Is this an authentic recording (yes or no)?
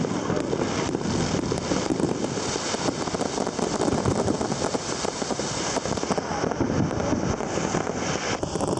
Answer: no